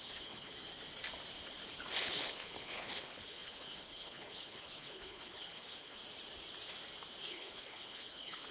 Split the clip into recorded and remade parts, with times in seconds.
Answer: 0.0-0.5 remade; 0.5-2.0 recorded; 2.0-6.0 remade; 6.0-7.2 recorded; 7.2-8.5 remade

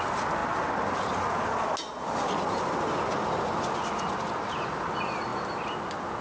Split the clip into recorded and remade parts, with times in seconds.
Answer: 0.0-6.2 recorded

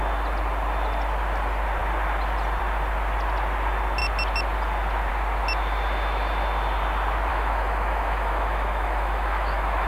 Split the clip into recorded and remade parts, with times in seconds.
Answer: 0.0-7.3 recorded; 7.3-9.9 remade

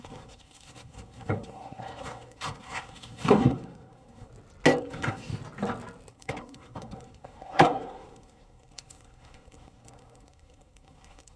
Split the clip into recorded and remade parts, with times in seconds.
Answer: 0.0-4.3 remade; 4.3-4.8 recorded; 4.8-5.3 remade; 5.3-6.1 recorded; 6.1-11.4 remade

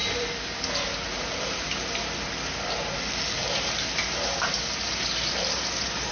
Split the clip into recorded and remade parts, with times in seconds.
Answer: 0.0-6.1 recorded

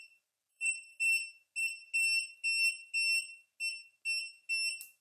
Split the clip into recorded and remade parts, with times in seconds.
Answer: 0.0-0.5 recorded; 0.5-1.0 remade; 1.0-5.0 recorded

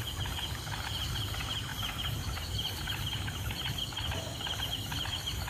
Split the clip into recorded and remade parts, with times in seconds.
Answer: 0.0-1.7 recorded; 1.7-3.8 remade; 3.8-5.5 recorded

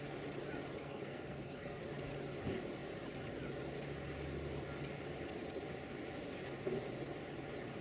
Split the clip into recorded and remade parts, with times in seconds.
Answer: 0.0-0.8 recorded; 0.8-1.8 remade; 1.8-7.8 recorded